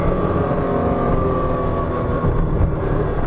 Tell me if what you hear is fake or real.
real